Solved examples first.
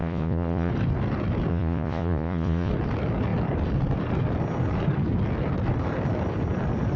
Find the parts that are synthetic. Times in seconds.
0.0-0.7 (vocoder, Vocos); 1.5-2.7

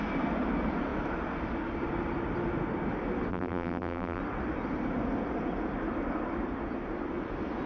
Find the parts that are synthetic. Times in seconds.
3.3-4.2 (vocoder, BigVGAN v2)

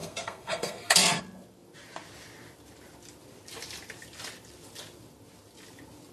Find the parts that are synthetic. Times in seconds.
0.0-1.2 (codec, SNAC)